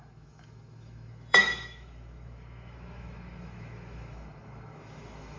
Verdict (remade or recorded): remade